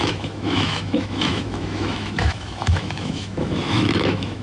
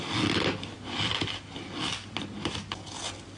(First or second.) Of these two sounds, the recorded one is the second